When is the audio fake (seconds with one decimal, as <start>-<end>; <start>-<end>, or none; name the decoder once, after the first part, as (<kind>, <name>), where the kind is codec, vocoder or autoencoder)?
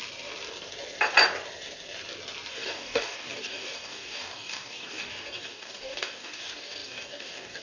2.5-7.6 (codec, DAC)